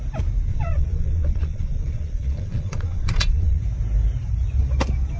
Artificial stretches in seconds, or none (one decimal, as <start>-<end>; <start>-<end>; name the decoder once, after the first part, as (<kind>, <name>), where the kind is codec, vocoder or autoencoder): 0.5-3.6 (vocoder, Vocos)